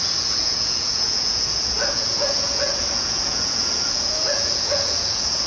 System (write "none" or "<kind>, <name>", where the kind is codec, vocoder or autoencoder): vocoder, Vocos